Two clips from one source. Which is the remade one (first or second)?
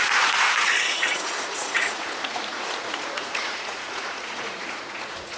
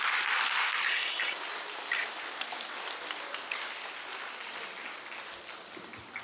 first